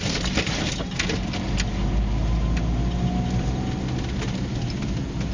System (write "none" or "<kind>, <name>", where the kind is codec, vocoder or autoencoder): none